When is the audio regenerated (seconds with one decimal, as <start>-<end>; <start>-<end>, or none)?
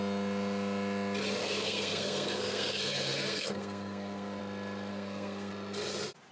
1.4-4.4; 4.9-5.5